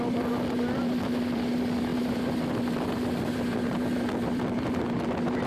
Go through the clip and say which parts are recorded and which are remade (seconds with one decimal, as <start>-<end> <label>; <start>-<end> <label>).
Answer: 0.0-5.5 remade